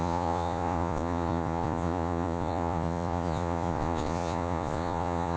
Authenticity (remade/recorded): remade